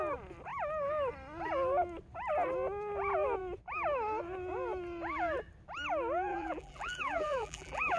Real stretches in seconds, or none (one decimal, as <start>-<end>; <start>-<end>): 0.0-6.3